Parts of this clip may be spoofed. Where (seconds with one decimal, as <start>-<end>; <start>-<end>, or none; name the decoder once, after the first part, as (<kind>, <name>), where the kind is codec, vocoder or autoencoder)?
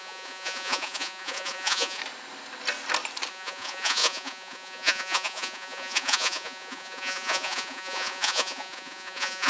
0.0-2.0 (vocoder, Vocos); 3.3-9.5